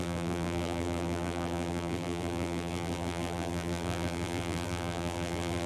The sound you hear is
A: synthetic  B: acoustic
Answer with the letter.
A